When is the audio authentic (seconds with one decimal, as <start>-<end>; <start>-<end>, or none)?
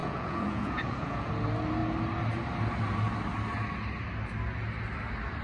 1.3-5.4